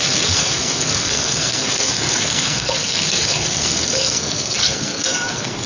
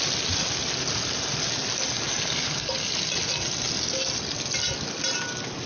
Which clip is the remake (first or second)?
first